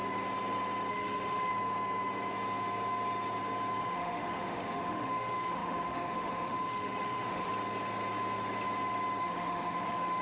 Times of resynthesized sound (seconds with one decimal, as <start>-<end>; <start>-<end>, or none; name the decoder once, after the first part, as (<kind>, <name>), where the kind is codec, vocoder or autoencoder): 0.9-1.5 (autoencoder, DAC-VAE); 3.8-7.5; 9.2-10.2